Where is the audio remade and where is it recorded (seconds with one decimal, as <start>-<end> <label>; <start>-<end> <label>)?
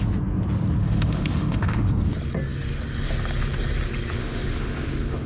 0.0-0.8 recorded; 0.8-1.9 remade; 1.9-4.2 recorded; 4.2-5.3 remade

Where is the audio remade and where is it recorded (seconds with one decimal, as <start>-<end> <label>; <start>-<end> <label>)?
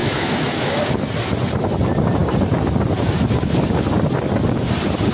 0.0-0.8 remade; 0.8-5.1 recorded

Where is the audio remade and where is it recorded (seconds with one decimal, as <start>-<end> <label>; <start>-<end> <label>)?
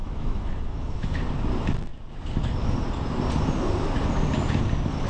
0.0-1.2 remade; 1.2-5.1 recorded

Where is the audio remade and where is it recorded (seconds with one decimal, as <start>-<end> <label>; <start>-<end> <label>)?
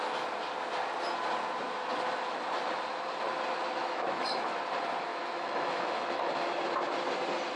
0.0-3.8 recorded; 3.8-4.6 remade; 4.6-5.1 recorded; 5.1-6.5 remade; 6.5-7.6 recorded